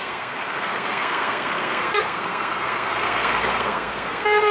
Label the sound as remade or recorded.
remade